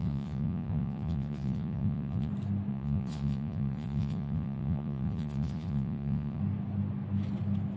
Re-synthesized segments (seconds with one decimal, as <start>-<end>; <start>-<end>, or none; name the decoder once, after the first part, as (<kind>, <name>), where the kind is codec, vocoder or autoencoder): 0.0-2.3 (vocoder, Vocos); 2.7-6.4